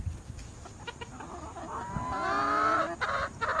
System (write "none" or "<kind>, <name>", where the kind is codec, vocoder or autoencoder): none